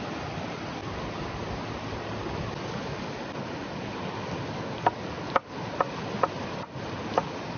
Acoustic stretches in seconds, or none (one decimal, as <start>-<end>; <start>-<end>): 0.0-7.6